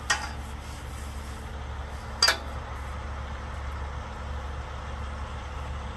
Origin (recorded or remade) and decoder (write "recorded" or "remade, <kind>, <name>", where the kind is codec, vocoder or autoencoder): recorded